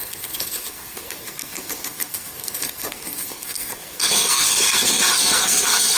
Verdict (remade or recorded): remade